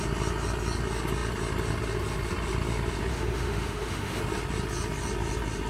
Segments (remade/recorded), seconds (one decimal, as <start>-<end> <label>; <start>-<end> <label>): 0.0-3.1 recorded; 3.1-4.2 remade; 4.2-5.7 recorded